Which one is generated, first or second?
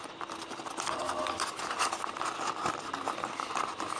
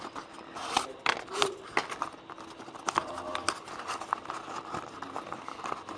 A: first